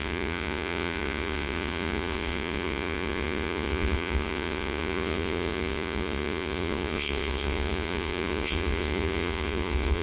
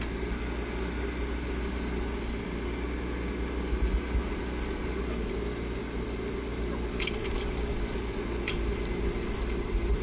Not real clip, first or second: first